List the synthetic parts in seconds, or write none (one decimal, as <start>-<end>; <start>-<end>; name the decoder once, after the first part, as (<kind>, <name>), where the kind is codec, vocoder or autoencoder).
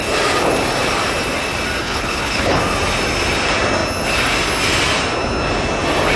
1.8-2.6 (codec, HILCodec)